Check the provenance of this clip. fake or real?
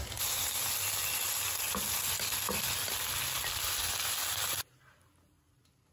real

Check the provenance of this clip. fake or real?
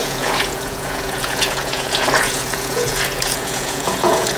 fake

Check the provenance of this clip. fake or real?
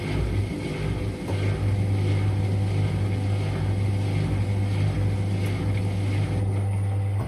real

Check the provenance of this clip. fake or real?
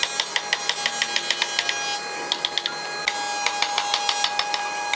real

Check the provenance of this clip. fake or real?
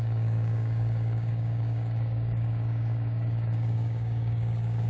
fake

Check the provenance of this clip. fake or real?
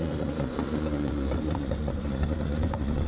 fake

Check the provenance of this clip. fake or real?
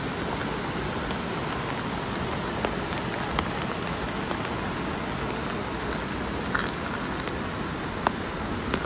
real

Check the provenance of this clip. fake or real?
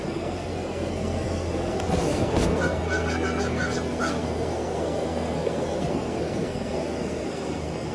fake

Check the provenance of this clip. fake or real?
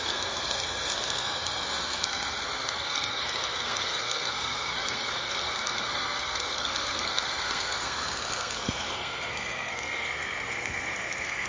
fake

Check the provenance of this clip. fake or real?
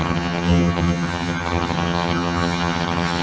fake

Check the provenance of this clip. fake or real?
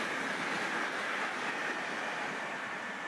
real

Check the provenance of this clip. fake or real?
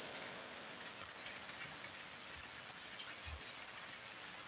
real